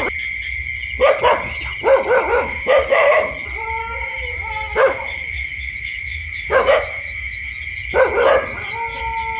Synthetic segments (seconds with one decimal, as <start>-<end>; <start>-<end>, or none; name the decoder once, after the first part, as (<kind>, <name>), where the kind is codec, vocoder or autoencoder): 2.3-3.3 (autoencoder, DAC-VAE); 3.8-7.5